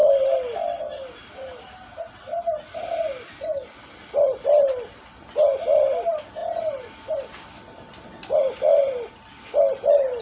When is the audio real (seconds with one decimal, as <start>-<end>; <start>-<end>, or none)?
0.0-2.1; 6.4-7.1